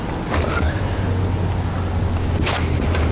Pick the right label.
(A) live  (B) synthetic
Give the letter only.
A